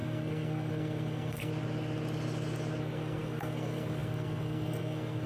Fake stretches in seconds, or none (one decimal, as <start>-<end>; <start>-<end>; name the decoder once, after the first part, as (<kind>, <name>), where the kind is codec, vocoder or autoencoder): 0.0-1.5 (codec, SNAC); 2.8-5.3